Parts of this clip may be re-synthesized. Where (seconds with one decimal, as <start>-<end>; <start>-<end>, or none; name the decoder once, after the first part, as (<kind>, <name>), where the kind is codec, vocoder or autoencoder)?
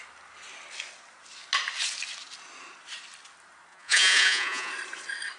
3.7-4.7 (vocoder, Vocos)